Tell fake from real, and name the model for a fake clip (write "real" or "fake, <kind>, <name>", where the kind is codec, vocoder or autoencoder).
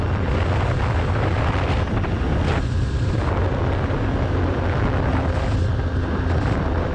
real